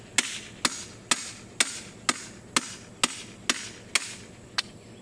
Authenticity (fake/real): real